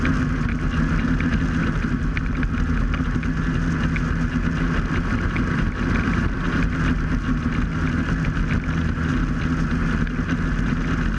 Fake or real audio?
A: real